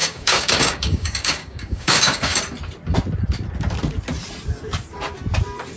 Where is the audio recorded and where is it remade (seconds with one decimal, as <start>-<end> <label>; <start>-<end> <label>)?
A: 0.0-2.4 remade; 2.4-5.8 recorded